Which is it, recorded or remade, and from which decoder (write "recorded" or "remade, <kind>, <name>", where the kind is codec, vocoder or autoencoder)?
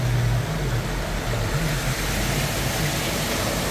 recorded